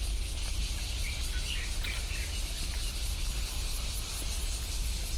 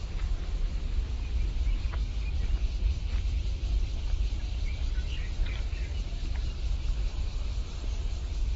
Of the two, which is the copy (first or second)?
second